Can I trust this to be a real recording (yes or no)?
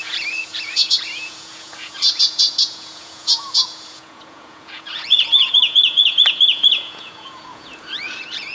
no